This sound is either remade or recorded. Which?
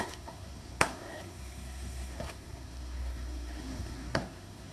remade